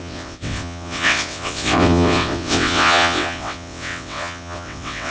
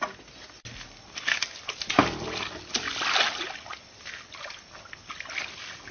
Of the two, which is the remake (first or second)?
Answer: first